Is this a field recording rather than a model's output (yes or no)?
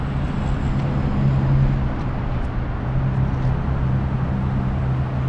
yes